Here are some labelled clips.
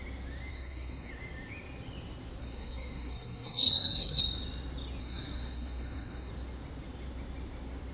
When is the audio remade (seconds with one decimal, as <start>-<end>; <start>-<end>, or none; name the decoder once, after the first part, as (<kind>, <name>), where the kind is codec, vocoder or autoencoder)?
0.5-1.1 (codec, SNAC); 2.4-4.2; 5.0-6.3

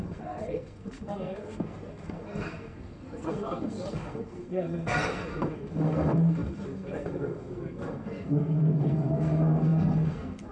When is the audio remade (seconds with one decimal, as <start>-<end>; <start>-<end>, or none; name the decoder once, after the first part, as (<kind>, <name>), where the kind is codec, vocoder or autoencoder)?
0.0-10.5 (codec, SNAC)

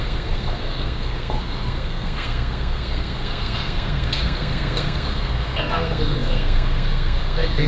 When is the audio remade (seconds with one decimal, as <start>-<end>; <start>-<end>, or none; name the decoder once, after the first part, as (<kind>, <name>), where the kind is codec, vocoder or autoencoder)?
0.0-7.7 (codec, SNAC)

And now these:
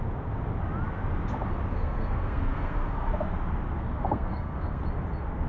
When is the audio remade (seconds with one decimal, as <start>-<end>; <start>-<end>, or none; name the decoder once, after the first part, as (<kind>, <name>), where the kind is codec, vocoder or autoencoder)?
1.7-3.1 (codec, SNAC); 3.8-4.8

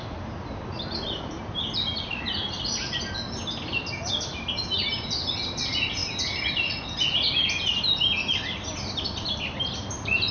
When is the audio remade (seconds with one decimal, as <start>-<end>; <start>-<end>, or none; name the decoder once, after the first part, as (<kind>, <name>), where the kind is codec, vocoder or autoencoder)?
none